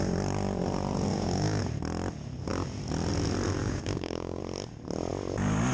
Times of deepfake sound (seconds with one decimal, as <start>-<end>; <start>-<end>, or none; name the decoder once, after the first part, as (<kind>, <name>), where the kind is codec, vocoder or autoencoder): 1.1-1.6 (codec, DAC); 3.6-4.4